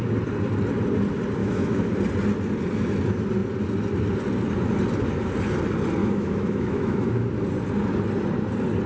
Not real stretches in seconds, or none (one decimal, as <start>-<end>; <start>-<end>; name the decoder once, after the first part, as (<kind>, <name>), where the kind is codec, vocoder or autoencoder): 1.4-1.9 (autoencoder, DAC-VAE); 6.0-7.3